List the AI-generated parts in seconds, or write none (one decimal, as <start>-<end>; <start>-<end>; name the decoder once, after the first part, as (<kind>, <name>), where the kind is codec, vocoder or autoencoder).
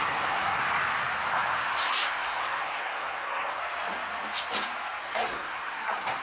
0.0-0.6 (codec, SNAC); 1.9-3.6; 5.0-6.2